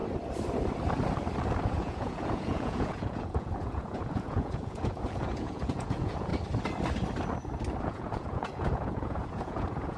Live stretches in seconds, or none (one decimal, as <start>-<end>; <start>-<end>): 0.0-1.6; 6.3-7.8